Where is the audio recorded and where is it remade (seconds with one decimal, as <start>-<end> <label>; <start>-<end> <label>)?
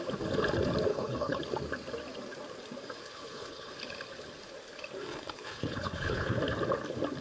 0.0-0.9 recorded; 0.9-1.4 remade; 1.4-3.0 recorded; 3.0-3.7 remade; 3.7-5.1 recorded; 5.1-6.4 remade; 6.4-7.2 recorded